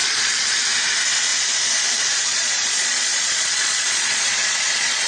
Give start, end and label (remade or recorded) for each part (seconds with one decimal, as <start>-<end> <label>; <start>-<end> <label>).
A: 0.0-0.6 remade; 0.6-2.3 recorded; 2.3-5.1 remade